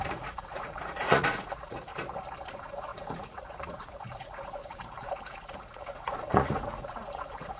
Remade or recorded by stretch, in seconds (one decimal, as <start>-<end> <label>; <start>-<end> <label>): 0.0-1.9 remade; 1.9-2.5 recorded; 2.5-7.6 remade